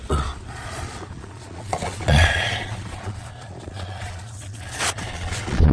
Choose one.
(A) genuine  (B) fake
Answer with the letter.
B